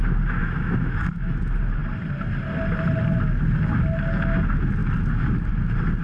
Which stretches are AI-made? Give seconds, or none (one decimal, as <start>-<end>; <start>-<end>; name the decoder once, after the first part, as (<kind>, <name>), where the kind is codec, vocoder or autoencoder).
0.4-1.4 (autoencoder, DAC-VAE)